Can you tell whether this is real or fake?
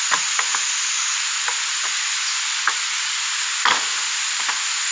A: real